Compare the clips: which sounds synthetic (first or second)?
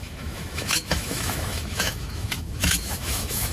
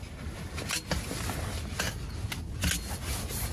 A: first